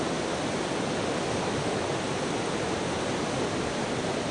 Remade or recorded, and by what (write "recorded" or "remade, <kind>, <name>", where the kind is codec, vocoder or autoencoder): recorded